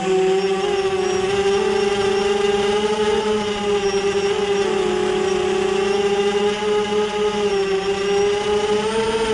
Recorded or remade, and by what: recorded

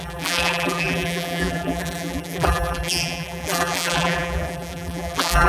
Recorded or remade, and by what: remade, vocoder, BigVGAN v2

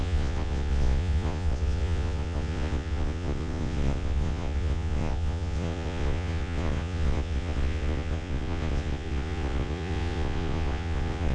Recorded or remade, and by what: remade, vocoder, Vocos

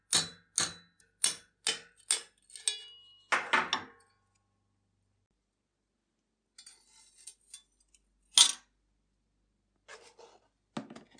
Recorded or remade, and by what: recorded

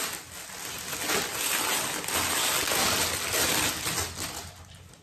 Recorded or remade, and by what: recorded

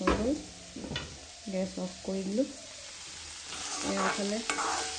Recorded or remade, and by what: recorded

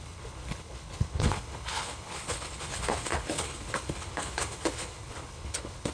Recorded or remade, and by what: remade, codec, HILCodec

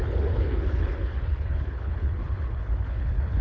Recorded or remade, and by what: remade, codec, HILCodec